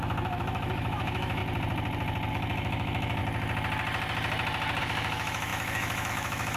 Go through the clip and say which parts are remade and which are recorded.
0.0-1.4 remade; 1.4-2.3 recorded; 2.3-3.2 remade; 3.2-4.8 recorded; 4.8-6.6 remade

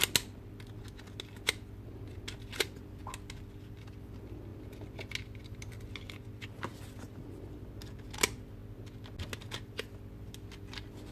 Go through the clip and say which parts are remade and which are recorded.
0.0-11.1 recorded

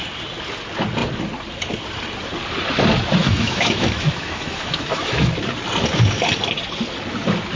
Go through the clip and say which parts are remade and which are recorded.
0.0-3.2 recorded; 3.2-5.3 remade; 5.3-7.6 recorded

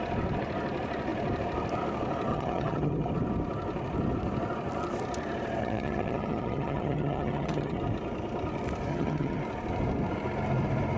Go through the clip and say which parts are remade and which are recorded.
0.0-2.3 recorded; 2.3-3.1 remade; 3.1-5.6 recorded; 5.6-7.8 remade; 7.8-8.9 recorded; 8.9-9.4 remade; 9.4-11.0 recorded

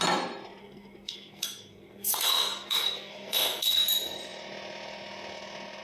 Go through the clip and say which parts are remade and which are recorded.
0.0-0.6 recorded; 0.6-3.8 remade; 3.8-5.8 recorded

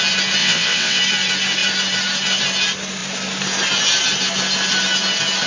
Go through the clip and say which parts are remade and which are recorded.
0.0-0.4 recorded; 0.4-1.0 remade; 1.0-5.5 recorded